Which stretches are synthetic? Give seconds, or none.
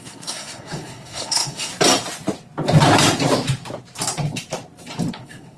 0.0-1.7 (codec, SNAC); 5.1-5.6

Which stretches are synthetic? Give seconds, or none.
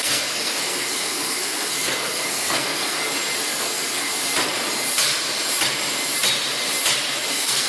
0.0-3.0 (codec, SNAC); 3.5-4.1; 7.3-7.7